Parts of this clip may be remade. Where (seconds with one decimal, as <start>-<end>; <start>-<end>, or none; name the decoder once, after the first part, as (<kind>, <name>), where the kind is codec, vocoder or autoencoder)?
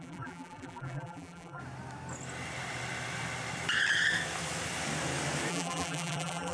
0.0-1.6 (vocoder, BigVGAN v2); 5.5-6.5